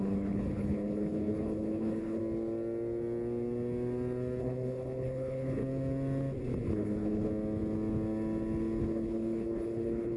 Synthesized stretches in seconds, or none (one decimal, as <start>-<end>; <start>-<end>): 0.0-2.2; 4.4-5.6; 6.7-7.3; 8.8-10.2